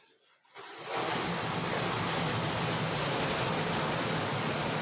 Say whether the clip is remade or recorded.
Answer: recorded